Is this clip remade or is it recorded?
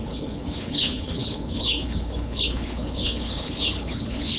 remade